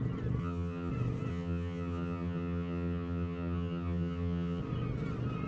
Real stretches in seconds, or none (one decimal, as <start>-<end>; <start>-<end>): 0.0-0.4; 0.9-1.3; 4.6-5.5